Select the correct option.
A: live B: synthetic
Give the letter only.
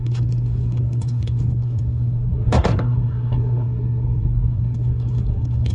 B